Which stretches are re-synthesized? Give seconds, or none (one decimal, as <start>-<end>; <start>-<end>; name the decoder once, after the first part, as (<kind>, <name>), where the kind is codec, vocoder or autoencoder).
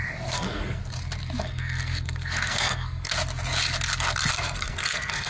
0.0-0.8 (codec, SNAC); 1.4-3.1; 4.3-5.3